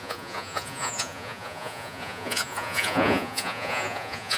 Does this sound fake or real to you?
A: fake